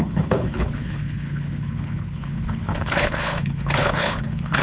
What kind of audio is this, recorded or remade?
remade